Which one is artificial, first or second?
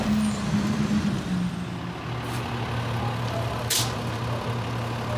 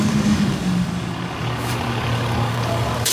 second